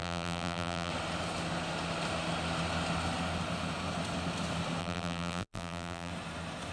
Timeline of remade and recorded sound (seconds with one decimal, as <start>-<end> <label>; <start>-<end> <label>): 0.0-0.9 remade; 0.9-4.8 recorded; 4.8-6.1 remade; 6.1-6.7 recorded